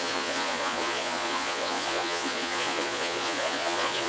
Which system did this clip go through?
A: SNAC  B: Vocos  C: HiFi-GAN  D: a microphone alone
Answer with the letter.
B